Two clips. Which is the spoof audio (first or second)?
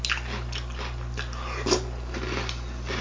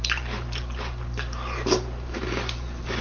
second